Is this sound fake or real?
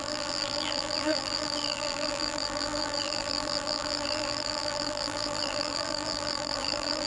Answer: fake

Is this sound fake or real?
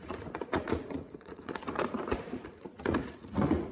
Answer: fake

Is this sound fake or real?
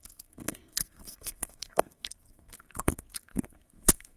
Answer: fake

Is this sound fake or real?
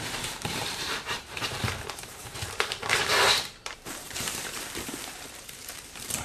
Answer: fake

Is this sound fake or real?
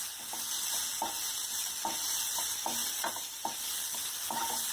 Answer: real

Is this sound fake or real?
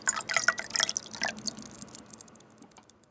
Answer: real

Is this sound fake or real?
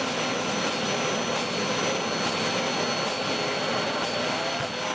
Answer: real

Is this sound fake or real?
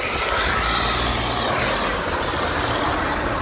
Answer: real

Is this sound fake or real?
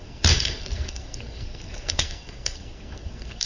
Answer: fake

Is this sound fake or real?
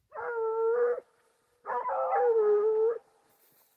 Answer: real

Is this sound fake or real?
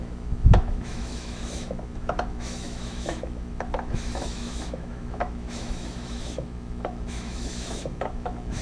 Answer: fake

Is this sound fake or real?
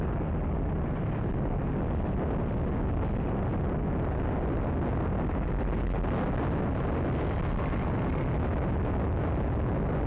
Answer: real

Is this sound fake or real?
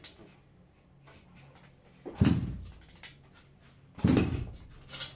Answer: real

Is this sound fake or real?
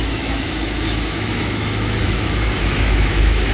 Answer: fake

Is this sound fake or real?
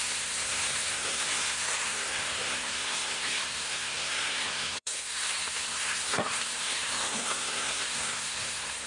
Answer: fake